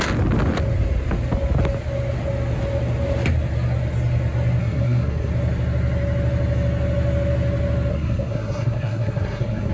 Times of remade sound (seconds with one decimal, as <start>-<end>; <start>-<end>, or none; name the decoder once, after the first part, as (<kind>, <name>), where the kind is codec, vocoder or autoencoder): 4.6-5.3 (codec, SNAC); 7.9-9.7